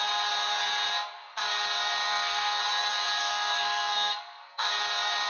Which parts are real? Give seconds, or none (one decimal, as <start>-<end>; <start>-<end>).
0.0-2.1; 2.6-3.2; 4.7-5.3

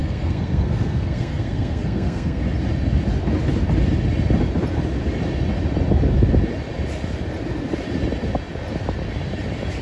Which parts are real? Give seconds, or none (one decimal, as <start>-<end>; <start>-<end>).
2.4-9.8

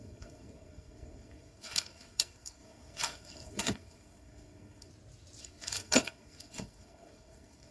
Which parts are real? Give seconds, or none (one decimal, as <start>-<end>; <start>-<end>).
4.9-5.4

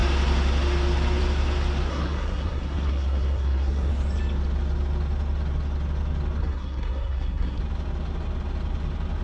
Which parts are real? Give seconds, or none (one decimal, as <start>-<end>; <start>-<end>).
0.0-1.9; 3.9-6.4; 7.6-9.2

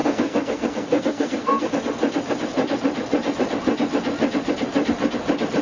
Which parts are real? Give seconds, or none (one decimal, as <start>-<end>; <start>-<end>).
1.7-5.6

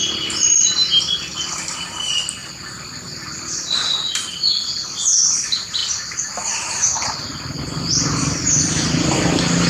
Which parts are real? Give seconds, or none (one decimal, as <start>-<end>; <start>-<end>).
0.0-9.7

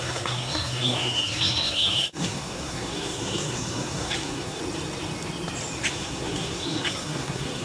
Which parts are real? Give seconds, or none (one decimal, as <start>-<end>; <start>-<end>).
4.6-5.9

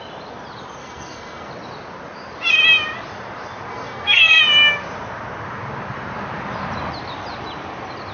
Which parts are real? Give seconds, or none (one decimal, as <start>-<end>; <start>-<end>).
0.0-0.8; 1.5-3.7; 4.4-8.1